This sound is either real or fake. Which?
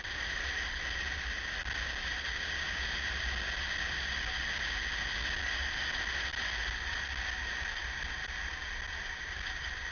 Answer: real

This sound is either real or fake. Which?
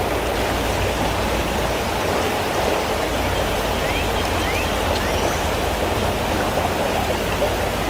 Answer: real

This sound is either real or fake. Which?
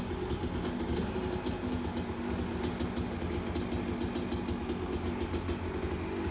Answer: real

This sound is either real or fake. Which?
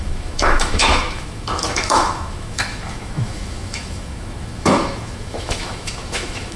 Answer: fake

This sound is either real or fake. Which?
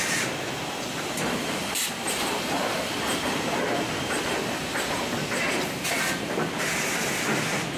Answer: real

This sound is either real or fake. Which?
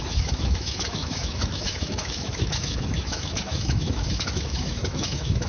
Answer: fake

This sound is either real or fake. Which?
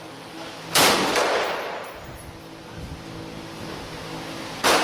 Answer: real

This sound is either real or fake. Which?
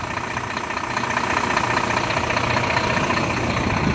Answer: real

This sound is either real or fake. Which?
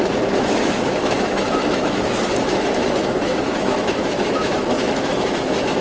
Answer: fake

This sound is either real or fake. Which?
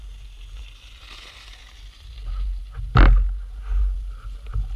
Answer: real